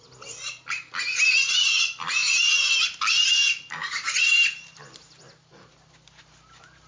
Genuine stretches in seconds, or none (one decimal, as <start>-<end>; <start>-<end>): 0.0-6.9